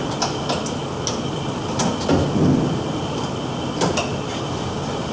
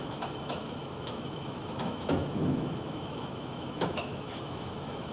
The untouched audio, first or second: first